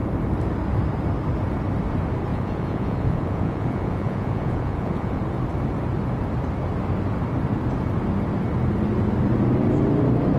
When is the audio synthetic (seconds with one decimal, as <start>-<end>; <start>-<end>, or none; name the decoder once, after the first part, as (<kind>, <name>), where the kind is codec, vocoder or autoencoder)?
2.3-5.2 (vocoder, Vocos)